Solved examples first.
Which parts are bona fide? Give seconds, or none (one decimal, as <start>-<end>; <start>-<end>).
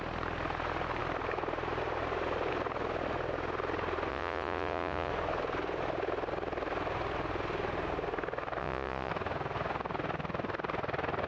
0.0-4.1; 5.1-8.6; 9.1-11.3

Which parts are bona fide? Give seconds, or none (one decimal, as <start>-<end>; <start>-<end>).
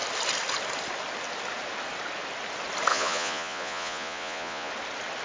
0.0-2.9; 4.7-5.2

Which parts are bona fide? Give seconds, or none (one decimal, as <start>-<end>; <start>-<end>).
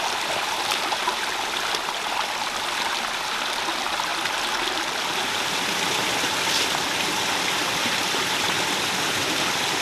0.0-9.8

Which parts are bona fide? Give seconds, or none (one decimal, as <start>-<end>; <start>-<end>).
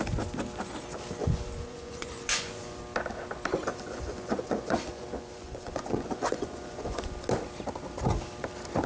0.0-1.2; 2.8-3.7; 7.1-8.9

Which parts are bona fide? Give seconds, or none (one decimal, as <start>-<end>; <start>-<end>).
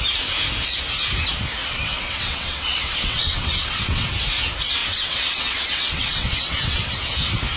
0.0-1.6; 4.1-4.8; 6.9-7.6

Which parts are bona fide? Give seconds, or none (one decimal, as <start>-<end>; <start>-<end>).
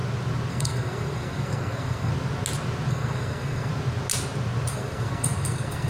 0.0-0.5; 2.1-2.9; 3.7-4.7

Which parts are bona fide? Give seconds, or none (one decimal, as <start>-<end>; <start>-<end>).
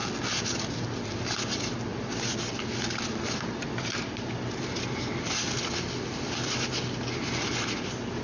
0.0-8.2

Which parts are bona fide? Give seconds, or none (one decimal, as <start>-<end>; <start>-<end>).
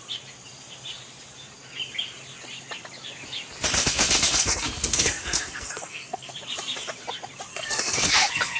0.0-3.8; 6.3-7.5